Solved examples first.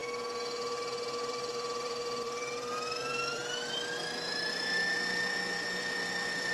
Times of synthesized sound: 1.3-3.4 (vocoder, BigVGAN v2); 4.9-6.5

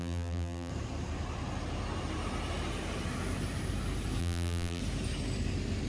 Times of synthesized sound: 0.0-0.7 (vocoder, BigVGAN v2); 4.2-4.8

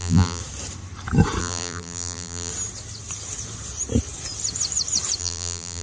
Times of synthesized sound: 0.0-0.4 (vocoder, BigVGAN v2); 1.4-2.5; 5.2-5.8

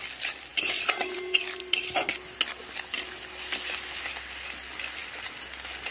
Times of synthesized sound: 0.5-1.8 (vocoder, BigVGAN v2)

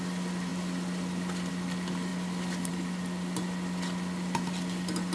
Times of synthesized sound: none

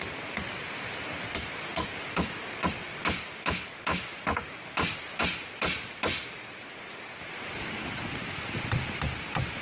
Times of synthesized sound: 0.0-1.7 (vocoder, BigVGAN v2); 5.2-9.6

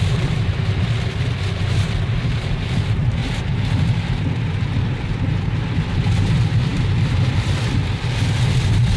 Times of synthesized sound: 0.0-3.2 (vocoder, BigVGAN v2); 4.4-9.0

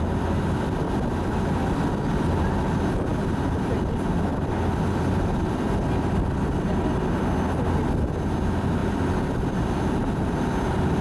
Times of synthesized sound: 3.1-3.8 (vocoder, BigVGAN v2); 4.3-7.2; 8.8-9.7